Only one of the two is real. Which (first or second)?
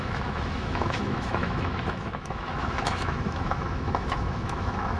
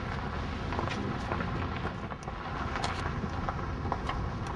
second